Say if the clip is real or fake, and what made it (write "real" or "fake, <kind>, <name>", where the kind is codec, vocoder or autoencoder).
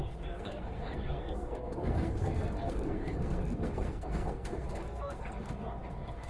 fake, codec, SNAC